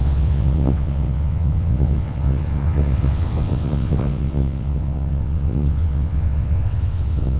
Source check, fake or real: fake